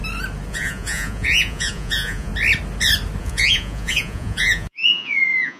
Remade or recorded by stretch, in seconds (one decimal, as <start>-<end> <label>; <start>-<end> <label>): 0.0-0.5 recorded; 0.5-2.3 remade; 2.3-3.2 recorded; 3.2-5.6 remade